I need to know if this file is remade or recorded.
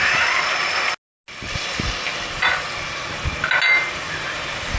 recorded